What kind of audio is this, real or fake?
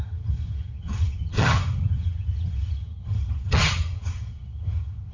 fake